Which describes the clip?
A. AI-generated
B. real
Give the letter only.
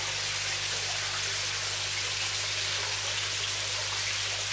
B